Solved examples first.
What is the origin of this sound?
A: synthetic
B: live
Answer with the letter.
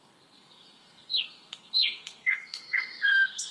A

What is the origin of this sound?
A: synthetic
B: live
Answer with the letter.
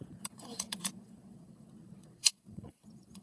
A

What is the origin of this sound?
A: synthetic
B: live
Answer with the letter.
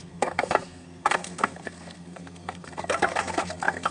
A